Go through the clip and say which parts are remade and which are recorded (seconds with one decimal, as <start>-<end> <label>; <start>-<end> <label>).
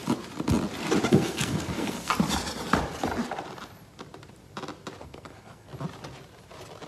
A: 0.0-1.1 recorded; 1.1-2.1 remade; 2.1-5.0 recorded; 5.0-5.7 remade; 5.7-6.9 recorded